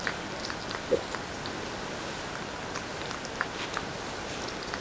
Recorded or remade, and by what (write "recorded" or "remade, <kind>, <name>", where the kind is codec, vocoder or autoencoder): recorded